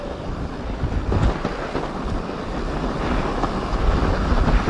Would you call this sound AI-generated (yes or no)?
no